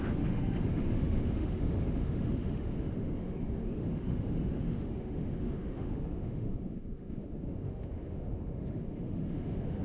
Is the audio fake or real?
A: fake